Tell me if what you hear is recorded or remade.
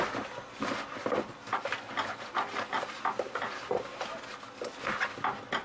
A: recorded